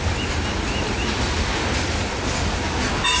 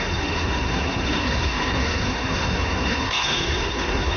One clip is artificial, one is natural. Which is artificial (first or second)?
second